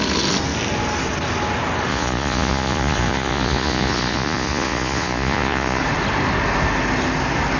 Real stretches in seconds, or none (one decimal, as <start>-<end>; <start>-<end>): 0.0-1.9; 5.8-7.6